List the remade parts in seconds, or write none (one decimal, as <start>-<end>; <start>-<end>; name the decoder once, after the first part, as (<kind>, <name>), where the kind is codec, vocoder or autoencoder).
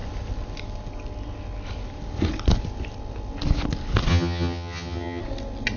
4.1-5.2 (vocoder, HiFi-GAN)